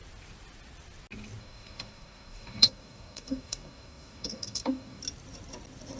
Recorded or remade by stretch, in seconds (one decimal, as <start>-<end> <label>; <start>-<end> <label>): 0.0-1.4 recorded; 1.4-5.0 remade; 5.0-6.0 recorded